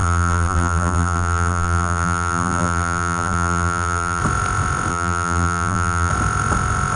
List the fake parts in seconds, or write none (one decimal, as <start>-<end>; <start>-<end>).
0.0-4.2; 4.9-6.1